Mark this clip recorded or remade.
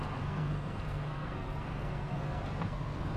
remade